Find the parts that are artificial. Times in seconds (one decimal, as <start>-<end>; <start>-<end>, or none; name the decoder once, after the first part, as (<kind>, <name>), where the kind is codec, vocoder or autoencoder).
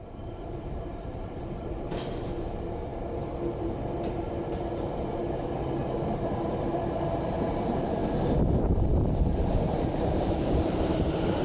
0.0-2.9 (vocoder, BigVGAN v2); 3.6-8.0; 8.7-11.4